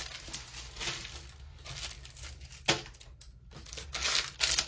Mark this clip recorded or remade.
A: recorded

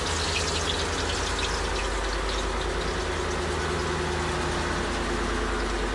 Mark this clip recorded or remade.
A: recorded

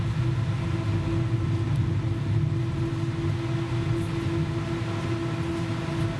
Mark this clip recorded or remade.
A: recorded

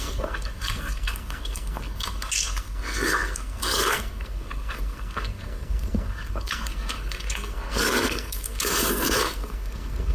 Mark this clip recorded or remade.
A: remade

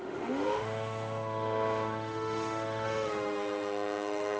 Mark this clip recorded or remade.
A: remade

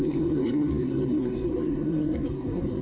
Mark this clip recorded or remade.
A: remade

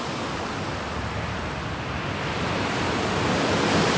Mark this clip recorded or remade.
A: recorded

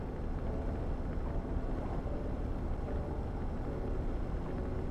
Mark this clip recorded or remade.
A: recorded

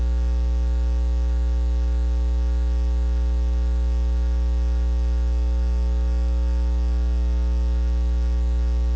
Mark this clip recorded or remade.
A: recorded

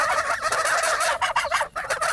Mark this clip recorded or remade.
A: recorded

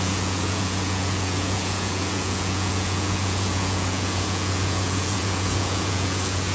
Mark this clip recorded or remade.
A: remade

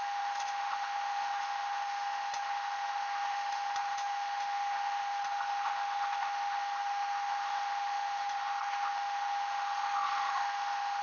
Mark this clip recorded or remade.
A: remade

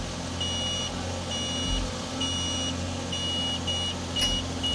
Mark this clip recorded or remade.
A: recorded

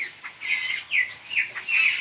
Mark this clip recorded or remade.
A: recorded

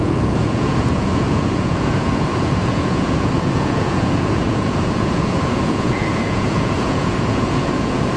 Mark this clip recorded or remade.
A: remade